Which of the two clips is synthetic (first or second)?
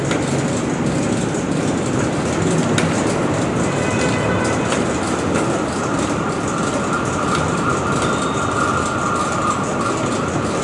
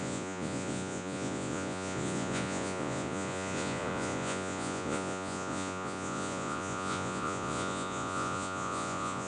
second